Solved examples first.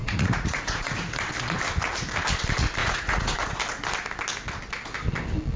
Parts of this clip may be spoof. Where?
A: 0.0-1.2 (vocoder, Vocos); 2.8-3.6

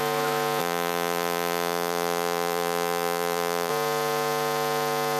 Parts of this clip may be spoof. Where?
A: 0.6-3.7 (vocoder, BigVGAN v2)

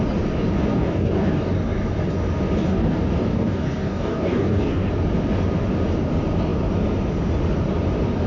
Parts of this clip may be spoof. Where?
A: 0.7-1.5 (codec, DAC); 2.7-4.9

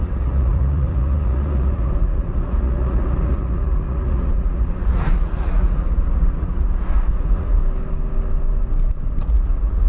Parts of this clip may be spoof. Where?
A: 0.0-7.6 (vocoder, Vocos); 9.2-9.9